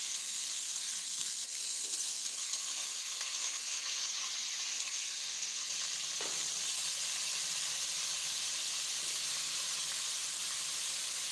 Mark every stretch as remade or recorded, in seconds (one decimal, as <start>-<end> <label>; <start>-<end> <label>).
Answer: 0.0-4.1 remade; 4.1-4.7 recorded; 4.7-5.7 remade; 5.7-11.3 recorded